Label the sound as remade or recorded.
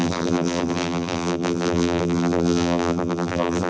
remade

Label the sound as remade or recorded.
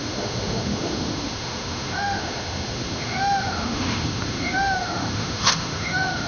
remade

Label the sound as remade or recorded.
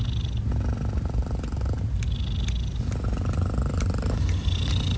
recorded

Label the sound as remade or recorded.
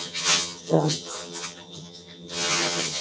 remade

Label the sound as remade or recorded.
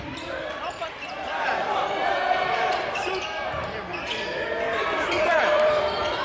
remade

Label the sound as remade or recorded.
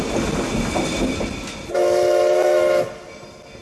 recorded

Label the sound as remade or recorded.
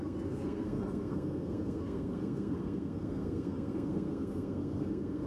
remade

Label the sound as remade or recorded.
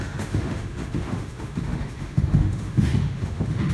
remade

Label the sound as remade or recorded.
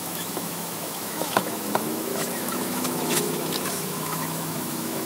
remade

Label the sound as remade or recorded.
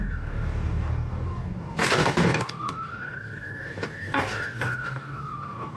remade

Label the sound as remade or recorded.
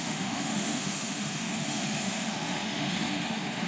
remade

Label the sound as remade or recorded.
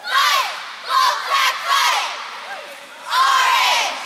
remade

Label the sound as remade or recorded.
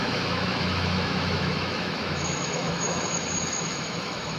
remade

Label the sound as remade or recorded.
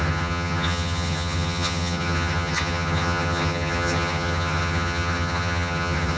remade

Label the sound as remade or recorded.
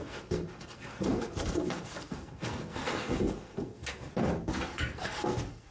remade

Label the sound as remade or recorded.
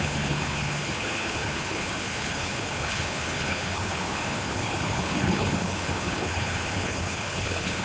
remade